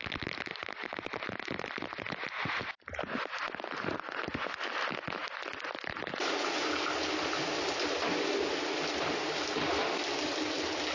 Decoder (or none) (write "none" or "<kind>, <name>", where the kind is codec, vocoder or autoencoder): none